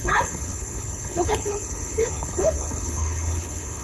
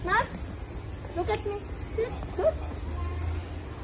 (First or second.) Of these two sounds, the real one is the second